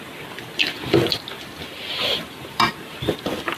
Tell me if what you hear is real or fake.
fake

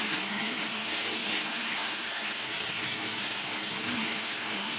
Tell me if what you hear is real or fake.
fake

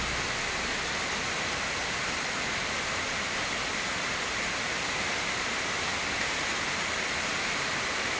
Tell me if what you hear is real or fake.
real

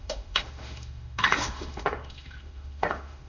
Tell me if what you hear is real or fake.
fake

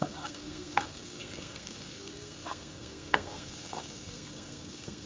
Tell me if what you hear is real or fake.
fake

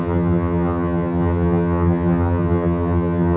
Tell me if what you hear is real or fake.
fake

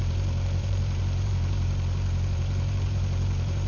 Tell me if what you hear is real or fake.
fake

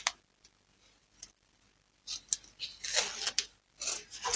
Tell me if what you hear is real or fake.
real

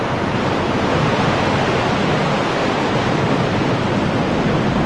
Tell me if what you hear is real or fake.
real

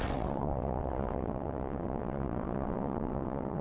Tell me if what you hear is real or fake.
fake